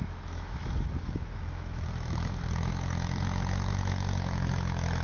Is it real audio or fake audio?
fake